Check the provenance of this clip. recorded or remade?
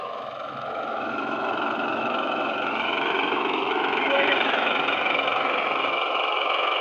remade